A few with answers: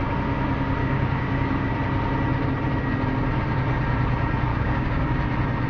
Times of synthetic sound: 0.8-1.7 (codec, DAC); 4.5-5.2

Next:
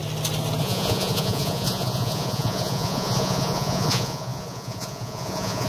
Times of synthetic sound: 0.6-5.7 (vocoder, Vocos)

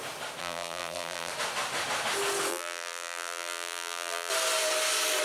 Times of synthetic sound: 0.4-1.3 (vocoder, BigVGAN v2); 2.5-4.3